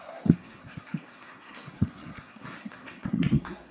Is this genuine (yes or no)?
no